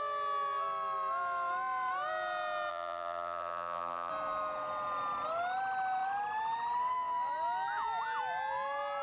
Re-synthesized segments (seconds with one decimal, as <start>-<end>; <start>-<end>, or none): 2.7-4.1